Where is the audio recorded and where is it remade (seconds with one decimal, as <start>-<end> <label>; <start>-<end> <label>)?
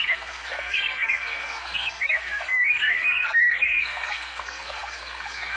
0.0-5.6 remade